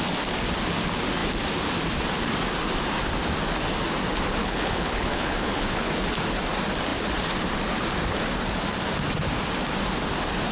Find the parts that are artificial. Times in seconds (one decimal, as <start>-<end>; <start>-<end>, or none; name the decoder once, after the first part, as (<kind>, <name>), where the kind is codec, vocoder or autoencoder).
4.4-5.9 (codec, HILCodec)